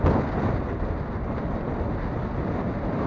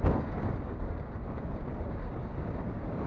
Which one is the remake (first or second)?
second